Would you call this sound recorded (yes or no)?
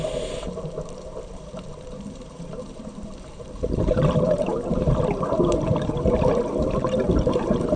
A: no